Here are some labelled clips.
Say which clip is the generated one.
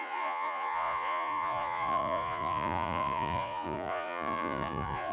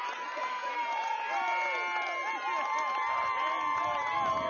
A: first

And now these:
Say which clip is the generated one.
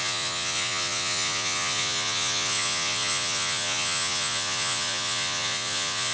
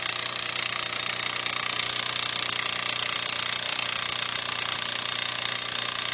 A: first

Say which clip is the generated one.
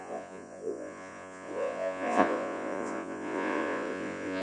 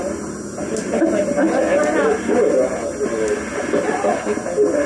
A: first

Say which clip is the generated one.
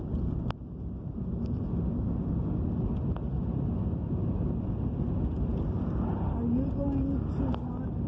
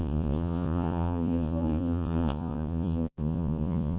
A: second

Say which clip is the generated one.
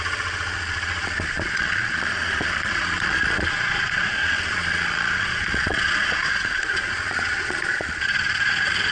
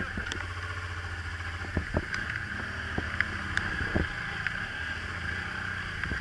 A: first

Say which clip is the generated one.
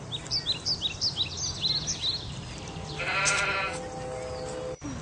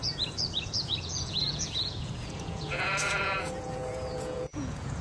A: second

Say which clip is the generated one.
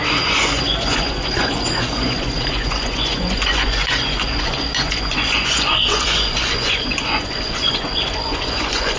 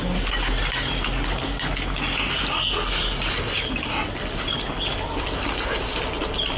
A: first